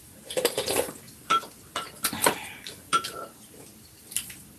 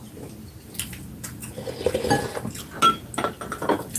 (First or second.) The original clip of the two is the second